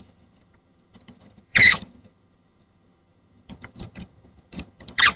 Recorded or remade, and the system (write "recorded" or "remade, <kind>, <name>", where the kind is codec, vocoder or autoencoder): remade, vocoder, HiFi-GAN